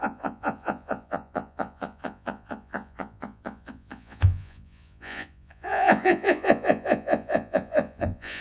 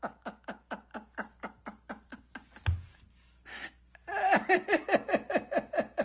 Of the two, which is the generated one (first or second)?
first